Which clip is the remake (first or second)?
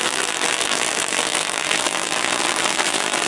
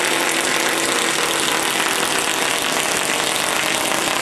first